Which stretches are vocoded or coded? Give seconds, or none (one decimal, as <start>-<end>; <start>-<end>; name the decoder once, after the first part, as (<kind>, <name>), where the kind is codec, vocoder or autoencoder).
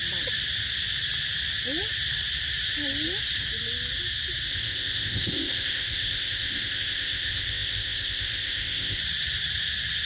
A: 4.5-9.0 (codec, ZipCodec)